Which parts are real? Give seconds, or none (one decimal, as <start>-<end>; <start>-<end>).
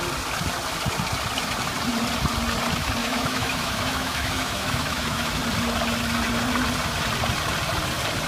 0.0-3.0; 5.4-8.3